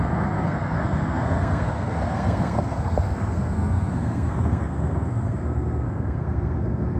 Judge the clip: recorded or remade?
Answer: remade